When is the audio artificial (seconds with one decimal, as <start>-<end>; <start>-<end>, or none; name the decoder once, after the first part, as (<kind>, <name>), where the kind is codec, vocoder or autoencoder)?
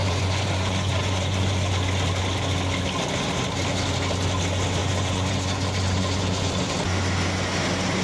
0.0-1.7 (vocoder, Vocos); 4.8-6.5